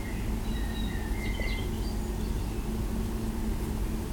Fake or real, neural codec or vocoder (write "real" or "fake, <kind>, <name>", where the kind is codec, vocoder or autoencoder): real